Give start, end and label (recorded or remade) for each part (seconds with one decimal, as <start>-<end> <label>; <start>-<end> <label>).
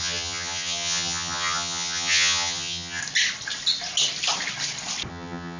0.0-3.0 remade; 3.0-5.1 recorded; 5.1-5.6 remade